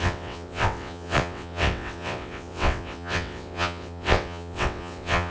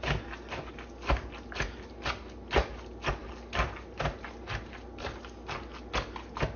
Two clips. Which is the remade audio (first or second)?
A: first